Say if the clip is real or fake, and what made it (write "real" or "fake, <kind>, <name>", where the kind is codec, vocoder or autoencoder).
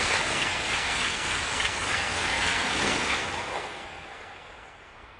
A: fake, codec, SNAC